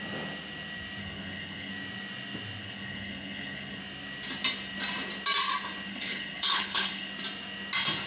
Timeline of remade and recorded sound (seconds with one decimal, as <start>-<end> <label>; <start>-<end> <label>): 0.0-1.0 recorded; 1.0-1.7 remade; 1.7-2.6 recorded; 2.6-3.8 remade; 3.8-5.9 recorded; 5.9-7.1 remade; 7.1-8.1 recorded